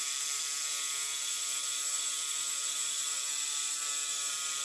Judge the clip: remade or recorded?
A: remade